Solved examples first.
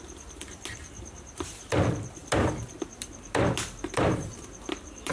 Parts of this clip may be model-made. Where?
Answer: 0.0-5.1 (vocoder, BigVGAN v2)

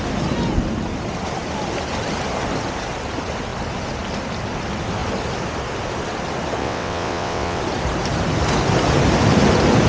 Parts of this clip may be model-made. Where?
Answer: 6.6-7.6 (vocoder, WaveNeXt)

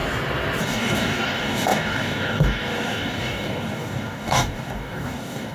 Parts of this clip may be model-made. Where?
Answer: 0.6-5.5 (codec, DAC)

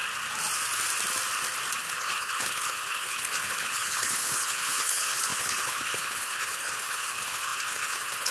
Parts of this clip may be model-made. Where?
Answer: 1.8-8.3 (codec, HILCodec)

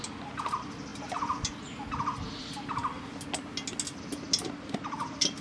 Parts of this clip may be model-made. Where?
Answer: none

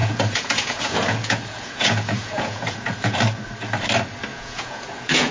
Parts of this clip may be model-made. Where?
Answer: 0.0-3.2 (vocoder, Vocos); 4.3-5.3